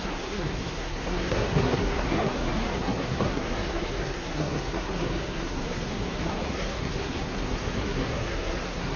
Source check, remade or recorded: remade